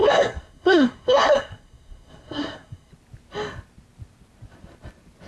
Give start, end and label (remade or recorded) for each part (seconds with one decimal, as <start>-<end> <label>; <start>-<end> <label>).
0.0-2.9 remade; 2.9-5.3 recorded